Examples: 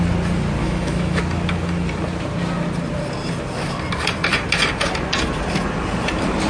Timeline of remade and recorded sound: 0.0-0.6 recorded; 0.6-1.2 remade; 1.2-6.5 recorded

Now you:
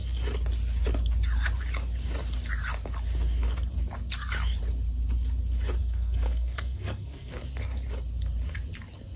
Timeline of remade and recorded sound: 0.0-5.8 recorded; 5.8-7.4 remade; 7.4-9.2 recorded